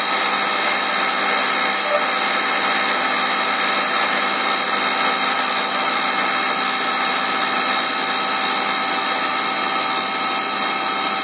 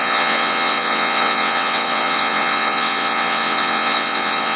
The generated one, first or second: second